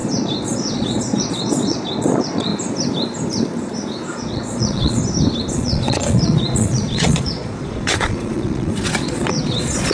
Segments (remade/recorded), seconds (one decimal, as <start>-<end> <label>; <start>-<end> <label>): 0.0-2.5 remade; 2.5-4.2 recorded; 4.2-5.0 remade; 5.0-5.5 recorded; 5.5-9.9 remade